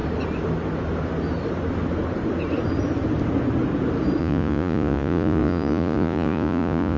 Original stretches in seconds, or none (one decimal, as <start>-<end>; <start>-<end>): 0.0-4.2